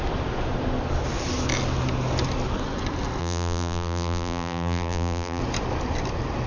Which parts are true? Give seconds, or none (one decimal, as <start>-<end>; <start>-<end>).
0.0-3.2; 5.4-6.5